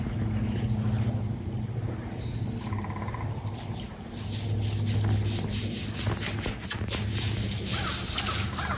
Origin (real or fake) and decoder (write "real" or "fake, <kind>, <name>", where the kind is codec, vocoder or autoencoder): real